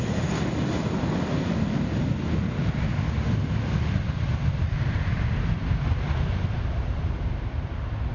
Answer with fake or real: real